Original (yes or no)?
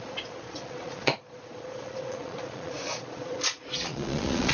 no